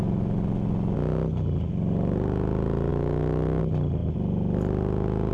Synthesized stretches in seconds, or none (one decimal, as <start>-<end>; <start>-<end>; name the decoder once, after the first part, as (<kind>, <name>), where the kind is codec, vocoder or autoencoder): 2.9-3.6 (autoencoder, DAC-VAE)

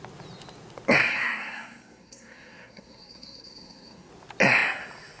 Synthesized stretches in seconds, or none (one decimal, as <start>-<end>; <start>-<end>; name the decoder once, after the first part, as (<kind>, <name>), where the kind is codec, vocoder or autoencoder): 1.0-4.1 (codec, SNAC)

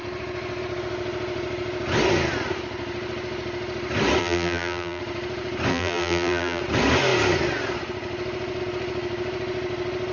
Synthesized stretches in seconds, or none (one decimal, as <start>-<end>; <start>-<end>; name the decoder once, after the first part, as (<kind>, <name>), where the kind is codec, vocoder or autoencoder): 4.2-5.0 (vocoder, BigVGAN v2); 5.7-6.6

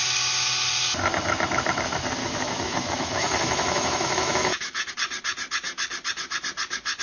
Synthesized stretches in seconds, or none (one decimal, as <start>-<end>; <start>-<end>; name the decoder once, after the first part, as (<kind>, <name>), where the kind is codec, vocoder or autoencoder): 2.2-4.9 (autoencoder, DAC-VAE)